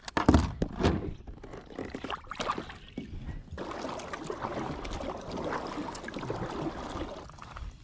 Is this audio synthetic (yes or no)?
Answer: no